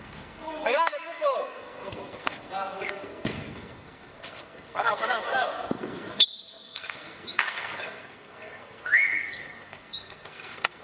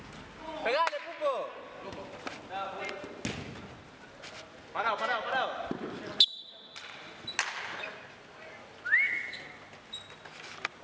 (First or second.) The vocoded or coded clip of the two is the first